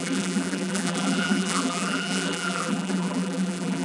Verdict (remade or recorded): remade